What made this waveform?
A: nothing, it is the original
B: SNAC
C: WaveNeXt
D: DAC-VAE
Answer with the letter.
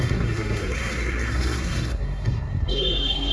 B